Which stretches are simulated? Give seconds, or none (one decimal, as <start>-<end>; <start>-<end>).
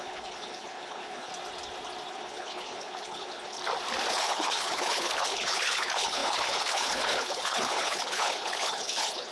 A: 0.0-1.3; 2.1-3.6; 4.1-9.3